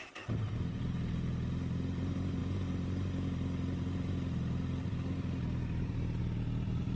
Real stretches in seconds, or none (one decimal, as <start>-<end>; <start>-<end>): 0.0-7.0